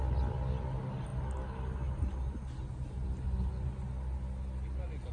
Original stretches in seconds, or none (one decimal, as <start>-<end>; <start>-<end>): 0.0-5.1